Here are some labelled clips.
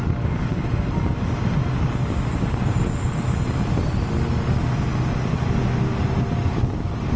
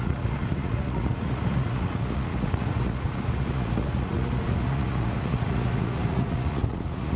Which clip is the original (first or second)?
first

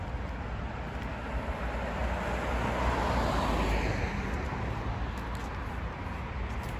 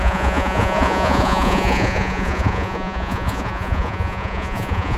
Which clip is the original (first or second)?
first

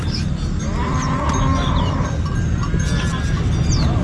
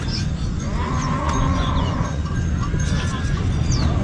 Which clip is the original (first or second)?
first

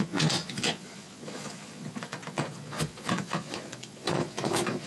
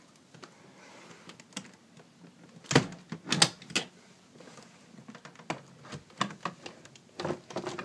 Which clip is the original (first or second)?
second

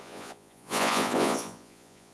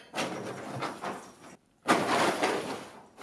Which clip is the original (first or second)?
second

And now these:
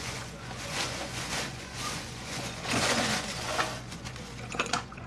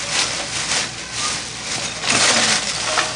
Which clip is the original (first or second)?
second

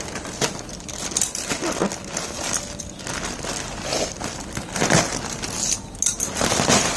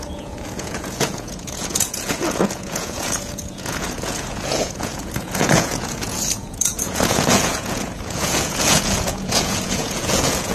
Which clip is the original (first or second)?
first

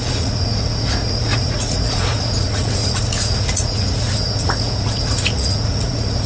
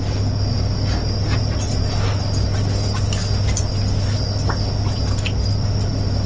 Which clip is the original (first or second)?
second